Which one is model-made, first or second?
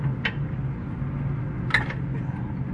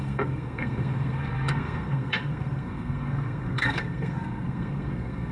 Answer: second